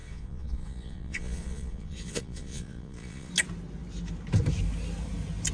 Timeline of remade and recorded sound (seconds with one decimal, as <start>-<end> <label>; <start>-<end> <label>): 0.0-3.3 remade; 3.3-5.5 recorded